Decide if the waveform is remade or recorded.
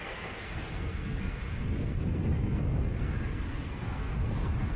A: remade